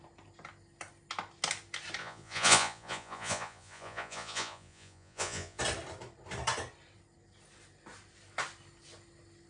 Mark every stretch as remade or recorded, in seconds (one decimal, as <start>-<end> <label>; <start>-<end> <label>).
0.0-2.0 recorded; 2.0-5.6 remade; 5.6-9.5 recorded